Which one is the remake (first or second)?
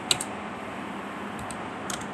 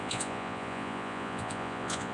second